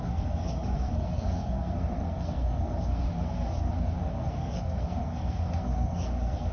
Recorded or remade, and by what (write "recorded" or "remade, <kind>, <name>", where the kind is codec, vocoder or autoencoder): remade, codec, SNAC